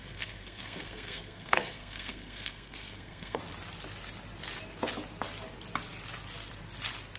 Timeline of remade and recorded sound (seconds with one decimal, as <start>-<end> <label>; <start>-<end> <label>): 0.0-3.4 remade; 3.4-7.2 recorded